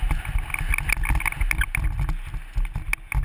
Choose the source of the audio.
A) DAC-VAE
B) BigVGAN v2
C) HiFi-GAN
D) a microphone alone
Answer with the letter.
D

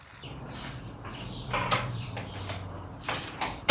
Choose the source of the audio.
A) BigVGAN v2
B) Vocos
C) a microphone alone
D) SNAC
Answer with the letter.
A